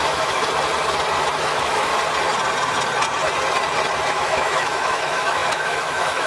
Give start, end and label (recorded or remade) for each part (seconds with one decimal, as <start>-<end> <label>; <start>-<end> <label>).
0.0-0.4 remade; 0.4-1.4 recorded; 1.4-1.9 remade; 1.9-4.1 recorded; 4.1-6.3 remade